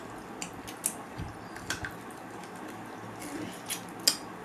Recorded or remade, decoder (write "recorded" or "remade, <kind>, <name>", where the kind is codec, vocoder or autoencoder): recorded